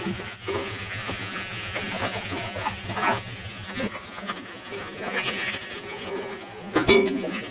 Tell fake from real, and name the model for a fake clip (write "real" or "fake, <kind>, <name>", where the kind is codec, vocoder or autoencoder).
fake, vocoder, Vocos